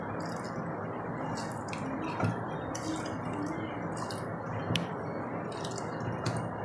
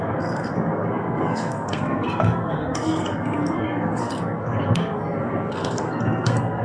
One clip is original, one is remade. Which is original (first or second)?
first